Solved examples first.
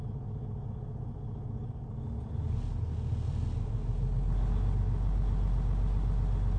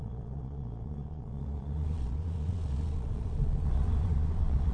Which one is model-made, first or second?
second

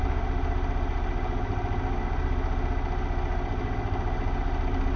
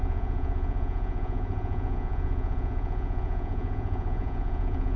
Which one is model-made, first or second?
second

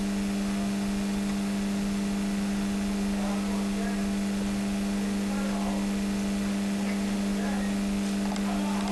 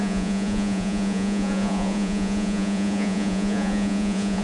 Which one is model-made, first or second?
second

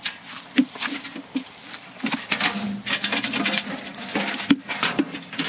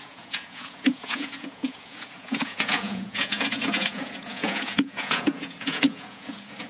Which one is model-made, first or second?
second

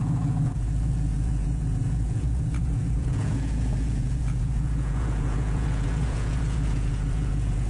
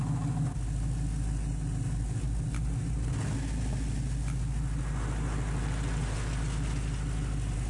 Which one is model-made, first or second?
first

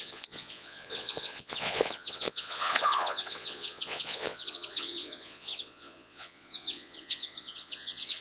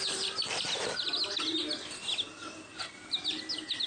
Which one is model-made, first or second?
first